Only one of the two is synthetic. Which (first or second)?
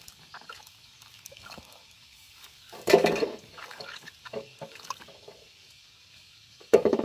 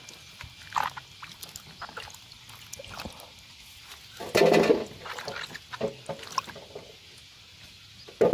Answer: first